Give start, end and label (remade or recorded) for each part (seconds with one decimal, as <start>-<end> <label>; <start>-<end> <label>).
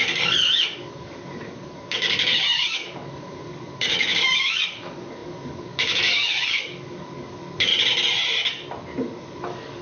0.0-7.7 remade; 7.7-9.0 recorded; 9.0-9.8 remade